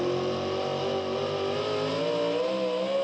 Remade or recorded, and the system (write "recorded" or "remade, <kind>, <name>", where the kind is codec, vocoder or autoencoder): recorded